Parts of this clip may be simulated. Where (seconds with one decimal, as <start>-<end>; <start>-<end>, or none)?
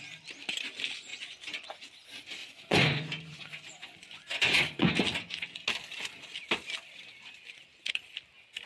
1.1-1.7; 2.4-4.9